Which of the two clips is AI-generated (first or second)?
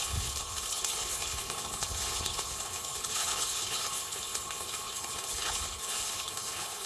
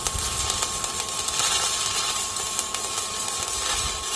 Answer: first